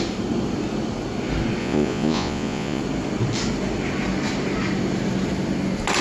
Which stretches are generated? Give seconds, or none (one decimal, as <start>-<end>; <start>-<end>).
1.6-2.8